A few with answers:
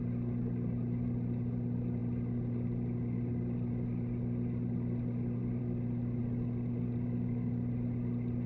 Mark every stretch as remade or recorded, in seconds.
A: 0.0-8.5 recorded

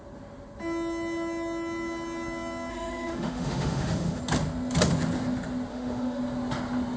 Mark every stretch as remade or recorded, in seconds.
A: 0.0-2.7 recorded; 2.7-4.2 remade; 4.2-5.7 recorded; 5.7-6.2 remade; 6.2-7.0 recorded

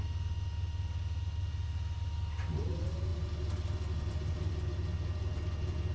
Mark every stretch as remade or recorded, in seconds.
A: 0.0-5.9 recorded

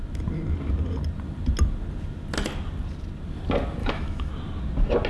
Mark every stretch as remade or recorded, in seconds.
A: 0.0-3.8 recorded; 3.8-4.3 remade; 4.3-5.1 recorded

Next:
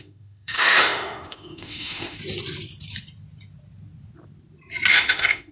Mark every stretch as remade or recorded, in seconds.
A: 0.0-2.2 remade; 2.2-4.9 recorded; 4.9-5.5 remade

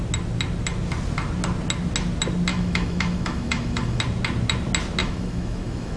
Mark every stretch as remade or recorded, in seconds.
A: 0.0-2.5 recorded; 2.5-4.0 remade; 4.0-5.0 recorded; 5.0-6.0 remade

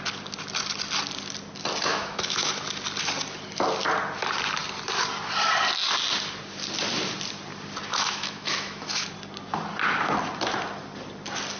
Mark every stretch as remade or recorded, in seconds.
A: 0.0-1.9 recorded; 1.9-2.5 remade; 2.5-7.9 recorded; 7.9-9.1 remade; 9.1-11.6 recorded

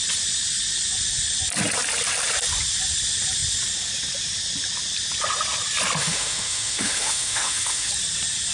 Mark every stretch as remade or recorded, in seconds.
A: 0.0-6.0 recorded; 6.0-7.9 remade; 7.9-8.5 recorded